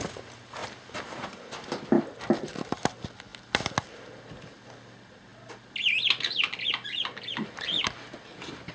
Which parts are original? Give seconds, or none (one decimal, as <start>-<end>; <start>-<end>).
0.0-8.7